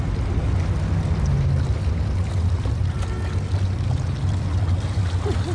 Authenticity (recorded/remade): recorded